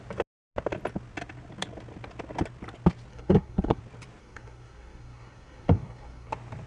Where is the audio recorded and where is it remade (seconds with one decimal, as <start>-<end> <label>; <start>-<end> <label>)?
0.0-3.1 recorded; 3.1-3.8 remade; 3.8-4.2 recorded; 4.2-6.3 remade; 6.3-6.7 recorded